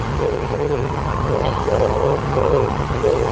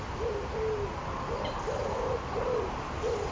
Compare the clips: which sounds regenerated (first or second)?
first